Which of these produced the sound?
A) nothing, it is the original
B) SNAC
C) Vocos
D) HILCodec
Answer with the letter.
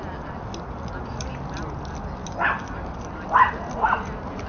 A